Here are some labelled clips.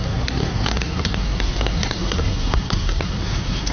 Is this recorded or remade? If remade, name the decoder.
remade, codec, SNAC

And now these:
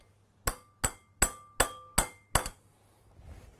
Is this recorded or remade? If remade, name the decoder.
recorded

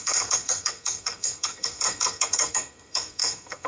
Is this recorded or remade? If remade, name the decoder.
remade, codec, SNAC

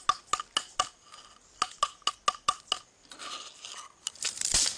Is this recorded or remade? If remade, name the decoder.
recorded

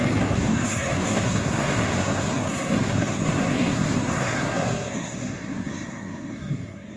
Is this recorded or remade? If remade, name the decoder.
remade, codec, SNAC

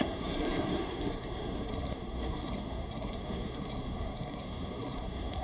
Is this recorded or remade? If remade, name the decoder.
remade, codec, SNAC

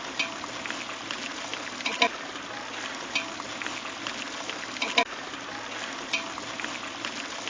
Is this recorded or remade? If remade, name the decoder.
recorded